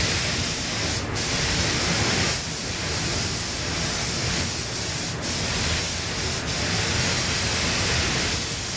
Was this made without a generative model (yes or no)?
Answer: yes